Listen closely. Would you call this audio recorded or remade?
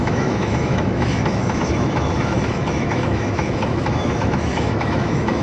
remade